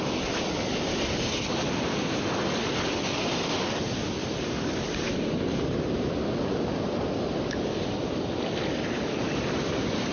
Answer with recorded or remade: recorded